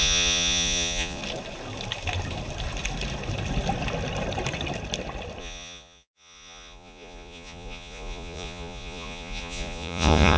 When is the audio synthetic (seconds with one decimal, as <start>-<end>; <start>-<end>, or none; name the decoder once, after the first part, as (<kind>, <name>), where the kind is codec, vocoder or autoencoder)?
0.0-1.2 (vocoder, Vocos); 5.4-10.4